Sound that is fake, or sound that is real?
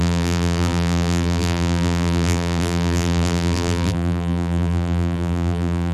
fake